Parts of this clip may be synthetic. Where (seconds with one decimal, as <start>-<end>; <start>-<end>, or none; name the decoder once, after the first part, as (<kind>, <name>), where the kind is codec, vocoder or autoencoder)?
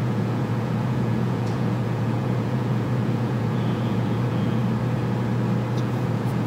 0.0-4.6 (vocoder, Vocos); 5.8-6.5